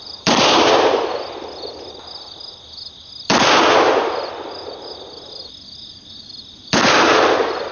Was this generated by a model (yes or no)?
no